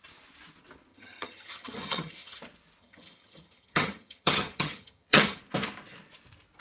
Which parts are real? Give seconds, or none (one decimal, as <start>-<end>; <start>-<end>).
0.0-0.9; 2.4-2.8; 5.4-6.6